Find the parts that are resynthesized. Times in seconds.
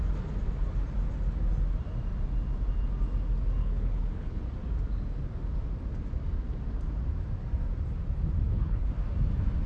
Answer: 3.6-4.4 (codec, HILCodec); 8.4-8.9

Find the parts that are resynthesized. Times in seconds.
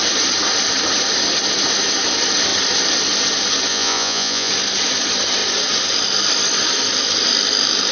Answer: 3.7-4.5 (vocoder, Vocos)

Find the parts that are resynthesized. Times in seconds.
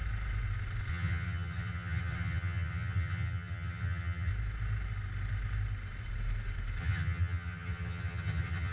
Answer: 0.9-4.3 (vocoder, HiFi-GAN); 6.8-8.7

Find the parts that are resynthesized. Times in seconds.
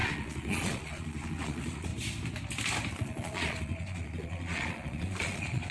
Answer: 0.0-1.9 (vocoder, Vocos); 2.9-5.7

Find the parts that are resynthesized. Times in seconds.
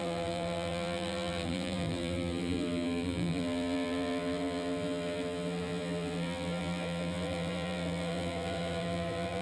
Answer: 0.0-9.4 (vocoder, BigVGAN v2)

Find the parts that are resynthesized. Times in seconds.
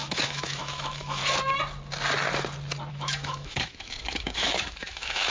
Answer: 0.0-1.2 (autoencoder, DAC-VAE); 2.9-5.3